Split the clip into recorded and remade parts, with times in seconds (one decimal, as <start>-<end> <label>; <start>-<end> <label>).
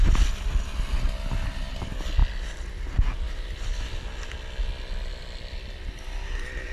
0.0-6.7 recorded